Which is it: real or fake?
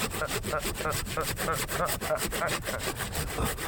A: real